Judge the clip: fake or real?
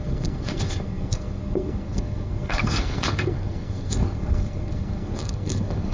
fake